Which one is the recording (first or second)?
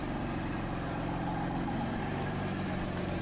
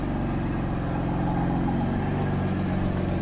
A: second